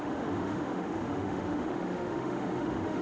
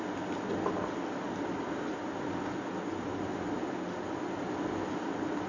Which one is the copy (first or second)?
first